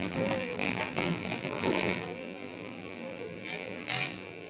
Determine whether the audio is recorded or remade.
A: remade